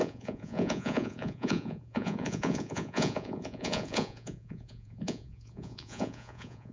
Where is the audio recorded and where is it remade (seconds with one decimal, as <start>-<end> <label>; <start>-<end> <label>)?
0.0-6.7 remade